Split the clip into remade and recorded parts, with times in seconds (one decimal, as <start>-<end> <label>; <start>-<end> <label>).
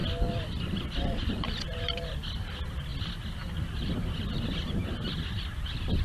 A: 0.0-1.7 recorded; 1.7-2.3 remade; 2.3-6.0 recorded